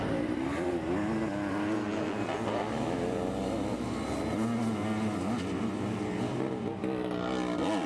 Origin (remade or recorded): recorded